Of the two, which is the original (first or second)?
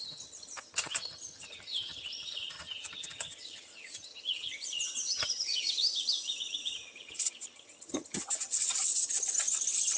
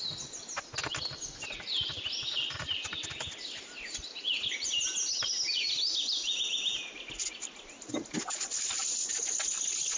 second